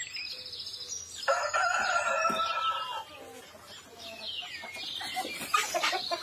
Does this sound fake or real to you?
real